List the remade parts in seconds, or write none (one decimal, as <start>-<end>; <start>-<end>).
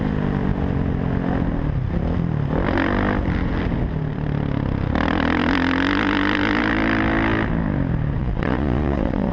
8.2-9.3